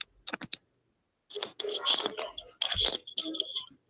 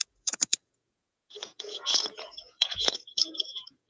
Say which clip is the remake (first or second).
second